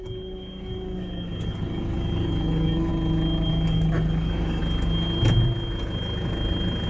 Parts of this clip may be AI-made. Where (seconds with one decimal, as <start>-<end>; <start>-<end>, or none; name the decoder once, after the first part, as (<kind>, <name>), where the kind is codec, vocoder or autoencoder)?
0.0-2.9 (codec, DAC); 3.5-4.6